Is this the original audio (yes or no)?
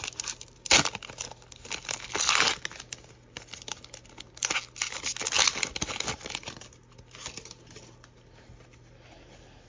yes